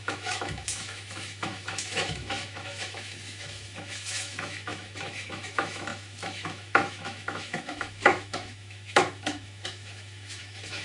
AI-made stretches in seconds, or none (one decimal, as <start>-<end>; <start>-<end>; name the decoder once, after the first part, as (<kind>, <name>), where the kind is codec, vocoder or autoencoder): 0.0-10.8 (autoencoder, DAC-VAE)